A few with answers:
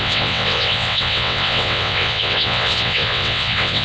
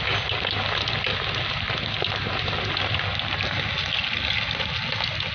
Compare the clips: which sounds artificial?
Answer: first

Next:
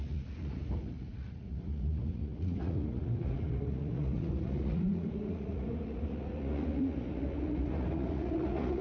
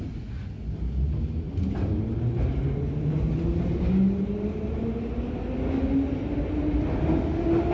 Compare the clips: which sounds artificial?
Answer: first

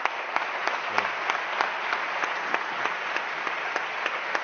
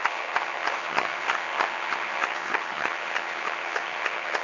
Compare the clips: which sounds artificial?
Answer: second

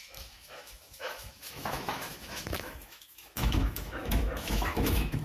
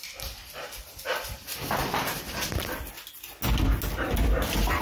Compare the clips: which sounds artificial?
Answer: first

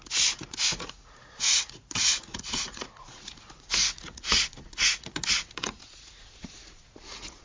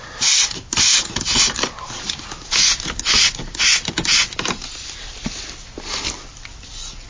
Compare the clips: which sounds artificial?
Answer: first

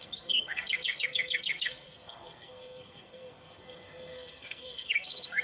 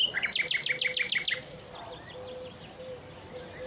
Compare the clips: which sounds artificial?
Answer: first